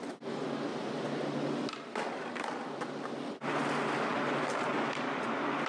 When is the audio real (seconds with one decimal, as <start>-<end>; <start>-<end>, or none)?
0.0-0.7; 3.6-5.7